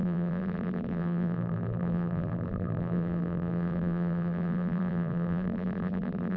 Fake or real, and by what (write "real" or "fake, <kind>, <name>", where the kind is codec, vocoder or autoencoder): fake, vocoder, BigVGAN v2